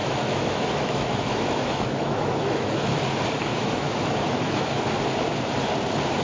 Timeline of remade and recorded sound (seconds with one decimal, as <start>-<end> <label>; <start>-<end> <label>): 0.0-2.9 remade; 2.9-3.5 recorded; 3.5-4.8 remade; 4.8-6.2 recorded